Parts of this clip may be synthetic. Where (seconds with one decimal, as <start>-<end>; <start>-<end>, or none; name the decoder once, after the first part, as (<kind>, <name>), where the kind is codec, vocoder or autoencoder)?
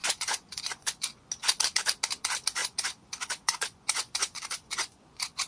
0.0-1.3 (vocoder, Vocos); 2.6-5.5